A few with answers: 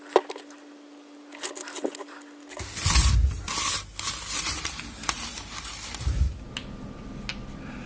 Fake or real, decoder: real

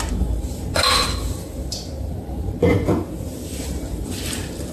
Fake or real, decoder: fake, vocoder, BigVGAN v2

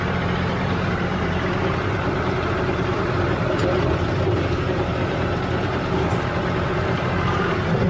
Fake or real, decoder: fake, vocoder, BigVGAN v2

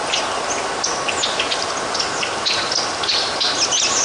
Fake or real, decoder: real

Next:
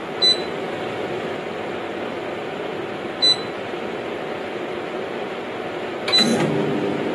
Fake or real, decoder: real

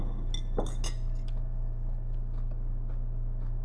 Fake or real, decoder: real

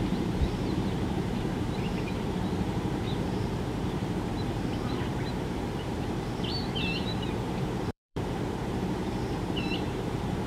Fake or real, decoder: fake, vocoder, BigVGAN v2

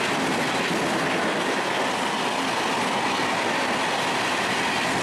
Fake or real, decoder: real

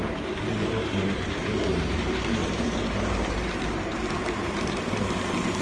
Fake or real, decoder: fake, vocoder, BigVGAN v2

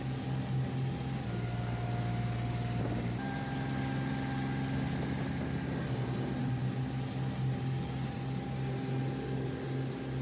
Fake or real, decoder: real